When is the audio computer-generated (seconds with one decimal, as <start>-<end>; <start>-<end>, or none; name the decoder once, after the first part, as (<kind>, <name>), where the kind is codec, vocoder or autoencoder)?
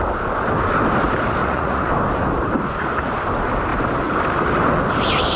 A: 1.4-1.9 (vocoder, Vocos)